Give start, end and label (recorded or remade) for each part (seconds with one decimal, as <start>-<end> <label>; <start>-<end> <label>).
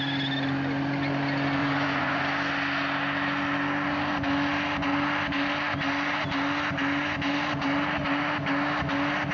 0.0-1.6 recorded; 1.6-2.2 remade; 2.2-9.3 recorded